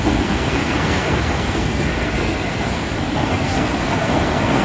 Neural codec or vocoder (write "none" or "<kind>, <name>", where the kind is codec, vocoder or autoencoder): codec, SNAC